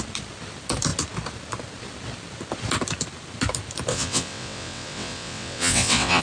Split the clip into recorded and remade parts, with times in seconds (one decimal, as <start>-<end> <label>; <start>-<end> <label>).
0.0-3.9 recorded; 3.9-6.2 remade

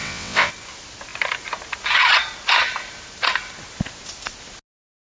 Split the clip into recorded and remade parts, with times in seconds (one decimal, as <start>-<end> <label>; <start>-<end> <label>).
0.0-0.5 remade; 0.5-5.1 recorded

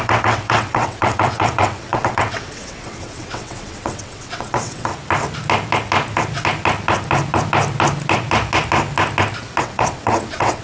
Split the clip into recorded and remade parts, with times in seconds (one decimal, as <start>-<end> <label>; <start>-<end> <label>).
0.0-4.9 remade; 4.9-9.6 recorded; 9.6-10.6 remade

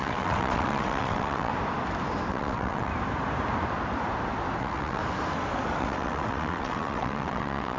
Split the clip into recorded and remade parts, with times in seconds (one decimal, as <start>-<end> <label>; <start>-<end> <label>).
0.0-1.5 remade; 1.5-2.3 recorded; 2.3-2.9 remade; 2.9-4.6 recorded; 4.6-5.0 remade; 5.0-5.8 recorded; 5.8-7.8 remade

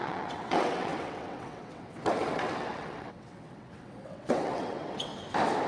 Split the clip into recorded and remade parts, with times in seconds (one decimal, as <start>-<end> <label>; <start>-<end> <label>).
0.0-5.1 remade; 5.1-5.7 recorded